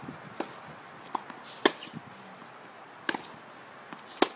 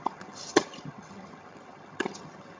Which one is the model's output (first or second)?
second